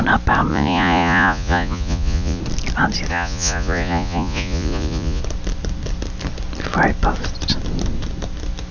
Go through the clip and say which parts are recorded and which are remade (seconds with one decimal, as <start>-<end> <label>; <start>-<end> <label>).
0.0-0.5 recorded; 0.5-2.4 remade; 2.4-3.1 recorded; 3.1-5.2 remade; 5.2-8.7 recorded